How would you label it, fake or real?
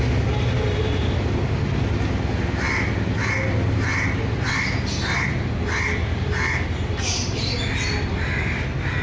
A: real